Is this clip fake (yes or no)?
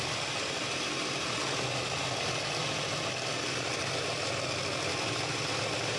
no